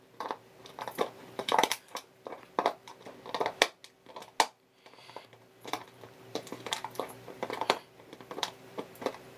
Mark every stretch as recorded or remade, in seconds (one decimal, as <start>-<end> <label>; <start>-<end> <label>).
0.0-2.9 remade; 2.9-5.3 recorded; 5.3-9.4 remade